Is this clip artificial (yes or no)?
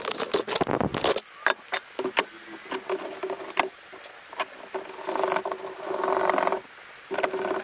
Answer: no